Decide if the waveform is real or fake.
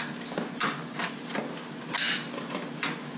real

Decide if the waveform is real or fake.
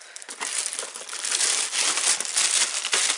real